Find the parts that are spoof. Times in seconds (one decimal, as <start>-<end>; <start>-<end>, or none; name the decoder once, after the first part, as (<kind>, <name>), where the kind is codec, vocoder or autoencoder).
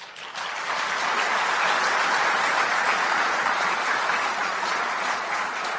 2.7-3.8 (vocoder, Vocos); 4.4-5.8